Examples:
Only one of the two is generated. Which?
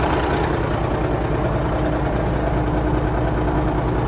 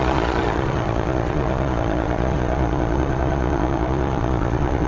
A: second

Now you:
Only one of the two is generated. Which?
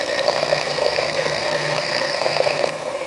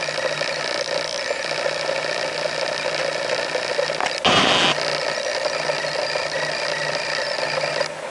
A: first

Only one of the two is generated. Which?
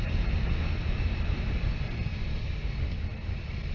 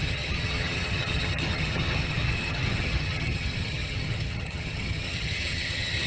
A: second